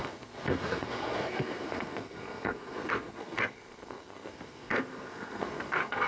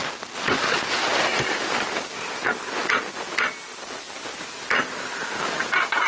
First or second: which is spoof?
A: first